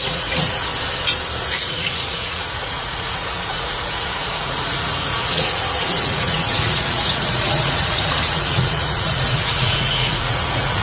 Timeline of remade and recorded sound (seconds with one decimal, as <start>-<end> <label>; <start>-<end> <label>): 0.0-0.7 remade; 0.7-1.5 recorded; 1.5-10.8 remade